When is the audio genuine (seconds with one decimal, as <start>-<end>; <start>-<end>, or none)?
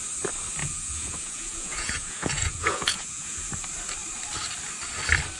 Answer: 0.0-0.6; 3.5-5.4